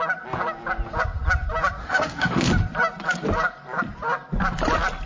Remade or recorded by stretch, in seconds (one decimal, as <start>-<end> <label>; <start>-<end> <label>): 0.0-1.8 recorded; 1.8-2.5 remade; 2.5-5.1 recorded